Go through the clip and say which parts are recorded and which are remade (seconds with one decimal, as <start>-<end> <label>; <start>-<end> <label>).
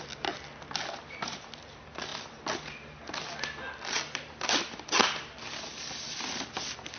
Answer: 0.0-7.0 recorded